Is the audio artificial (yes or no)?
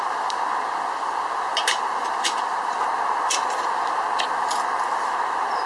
no